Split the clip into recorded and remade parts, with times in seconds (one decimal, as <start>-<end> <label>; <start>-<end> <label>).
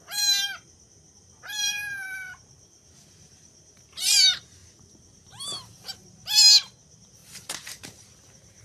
0.0-8.6 remade